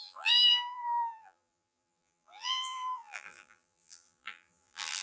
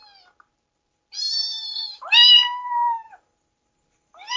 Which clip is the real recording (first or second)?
second